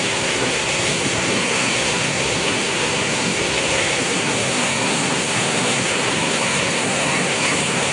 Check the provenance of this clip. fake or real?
fake